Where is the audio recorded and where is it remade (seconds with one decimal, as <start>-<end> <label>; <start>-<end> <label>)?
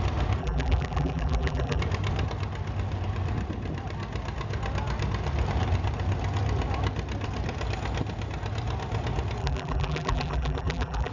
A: 0.0-0.4 recorded; 0.4-1.8 remade; 1.8-9.4 recorded; 9.4-11.1 remade